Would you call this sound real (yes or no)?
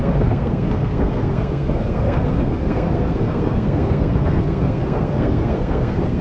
no